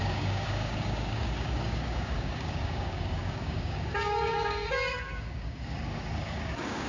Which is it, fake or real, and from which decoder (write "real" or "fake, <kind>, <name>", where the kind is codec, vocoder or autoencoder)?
fake, codec, DAC